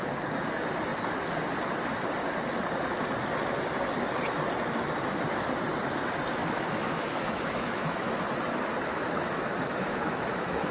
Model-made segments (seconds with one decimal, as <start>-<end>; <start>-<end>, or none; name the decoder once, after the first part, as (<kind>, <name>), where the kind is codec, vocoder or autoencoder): 6.4-8.1 (autoencoder, DAC-VAE); 8.9-10.7